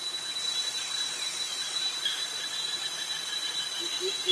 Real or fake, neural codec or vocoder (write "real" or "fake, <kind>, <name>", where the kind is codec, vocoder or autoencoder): real